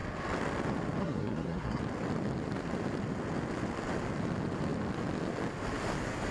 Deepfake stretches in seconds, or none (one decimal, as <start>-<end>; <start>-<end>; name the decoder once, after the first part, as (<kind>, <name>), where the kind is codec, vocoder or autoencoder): 1.0-1.8 (codec, SNAC)